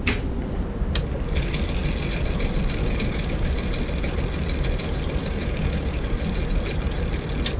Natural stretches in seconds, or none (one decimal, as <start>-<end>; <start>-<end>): 0.0-2.8; 3.5-5.2; 6.2-7.6